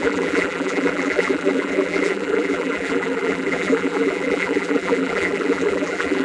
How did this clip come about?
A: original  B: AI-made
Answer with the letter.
B